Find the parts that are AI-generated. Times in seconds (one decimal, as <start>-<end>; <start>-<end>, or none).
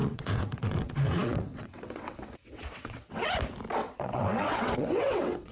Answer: 0.0-3.3; 3.8-5.5